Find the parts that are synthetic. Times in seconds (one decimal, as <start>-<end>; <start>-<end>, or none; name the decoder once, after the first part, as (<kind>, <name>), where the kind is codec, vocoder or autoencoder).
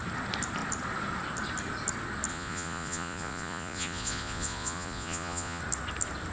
2.3-5.6 (vocoder, Vocos)